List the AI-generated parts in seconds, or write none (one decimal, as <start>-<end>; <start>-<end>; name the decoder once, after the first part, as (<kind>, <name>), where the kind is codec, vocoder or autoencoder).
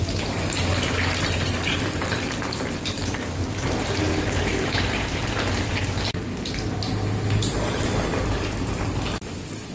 4.1-4.9 (autoencoder, DAC-VAE)